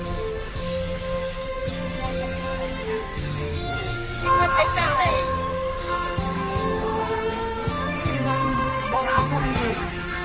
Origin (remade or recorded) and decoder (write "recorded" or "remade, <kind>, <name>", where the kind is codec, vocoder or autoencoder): remade, codec, SNAC